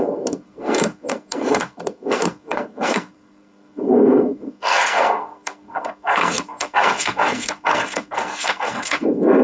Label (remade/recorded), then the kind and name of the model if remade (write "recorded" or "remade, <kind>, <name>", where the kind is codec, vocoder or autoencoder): remade, codec, SNAC